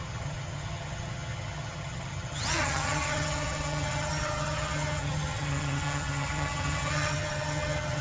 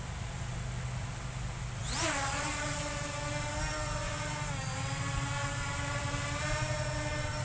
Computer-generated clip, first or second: first